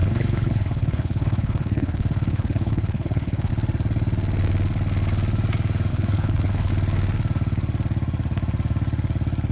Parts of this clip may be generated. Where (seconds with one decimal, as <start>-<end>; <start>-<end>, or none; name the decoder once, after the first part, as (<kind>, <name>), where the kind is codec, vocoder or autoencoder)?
0.0-3.5 (codec, HILCodec); 5.9-6.7